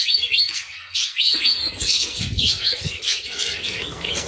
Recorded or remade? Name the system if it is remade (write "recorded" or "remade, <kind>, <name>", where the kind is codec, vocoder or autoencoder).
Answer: remade, codec, SNAC